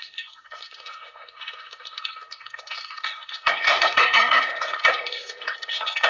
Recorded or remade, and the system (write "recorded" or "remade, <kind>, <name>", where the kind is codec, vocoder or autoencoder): remade, codec, SNAC